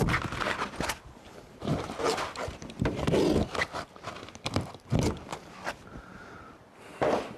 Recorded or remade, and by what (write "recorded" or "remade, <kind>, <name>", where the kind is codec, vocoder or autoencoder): recorded